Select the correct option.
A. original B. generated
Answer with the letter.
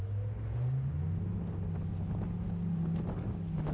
A